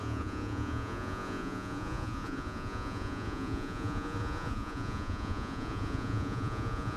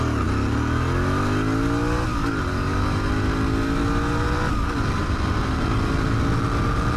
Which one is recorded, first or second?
second